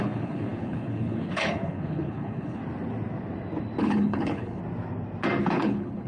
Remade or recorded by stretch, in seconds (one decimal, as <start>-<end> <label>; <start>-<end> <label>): 0.0-2.6 remade; 2.6-3.8 recorded; 3.8-4.6 remade; 4.6-5.4 recorded; 5.4-6.1 remade